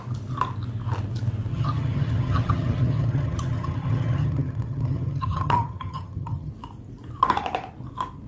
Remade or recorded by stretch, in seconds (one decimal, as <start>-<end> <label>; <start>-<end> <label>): 0.0-1.5 recorded; 1.5-6.5 remade; 6.5-8.3 recorded